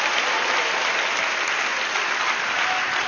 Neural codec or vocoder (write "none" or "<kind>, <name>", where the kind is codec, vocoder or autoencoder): none